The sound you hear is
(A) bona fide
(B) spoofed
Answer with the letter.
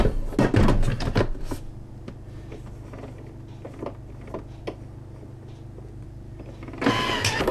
A